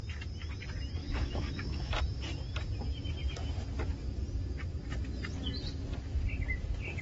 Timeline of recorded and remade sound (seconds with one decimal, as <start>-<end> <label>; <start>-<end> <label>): 0.0-1.0 recorded; 1.0-2.0 remade; 2.0-7.0 recorded